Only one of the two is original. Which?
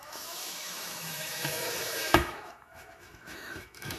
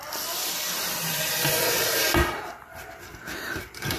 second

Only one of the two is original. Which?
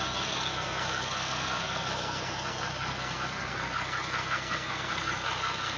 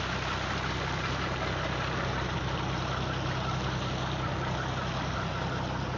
second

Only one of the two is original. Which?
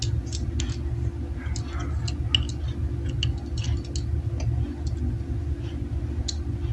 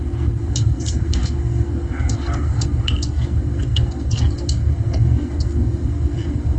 first